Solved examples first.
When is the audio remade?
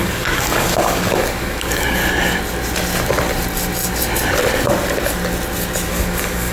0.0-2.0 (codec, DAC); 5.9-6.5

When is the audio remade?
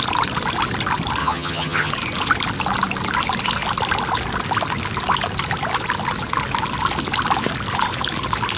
1.2-1.9 (vocoder, HiFi-GAN)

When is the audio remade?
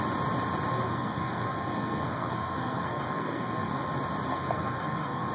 0.7-3.9 (codec, SNAC); 4.3-5.3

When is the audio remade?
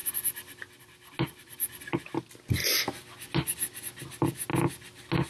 none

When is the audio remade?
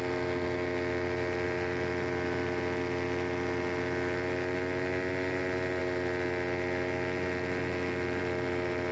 none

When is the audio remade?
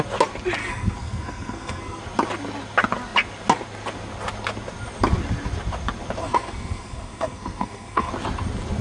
0.6-2.0 (codec, SNAC); 6.2-8.1